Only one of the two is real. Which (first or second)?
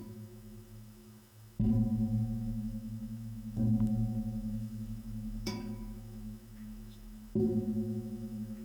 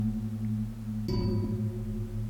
second